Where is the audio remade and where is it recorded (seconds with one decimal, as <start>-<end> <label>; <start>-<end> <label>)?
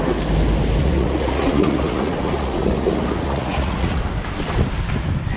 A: 0.0-0.8 recorded; 0.8-4.0 remade; 4.0-5.4 recorded